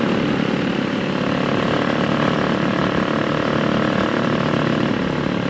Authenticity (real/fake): real